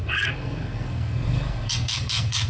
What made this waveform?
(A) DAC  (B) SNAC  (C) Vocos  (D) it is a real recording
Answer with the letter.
B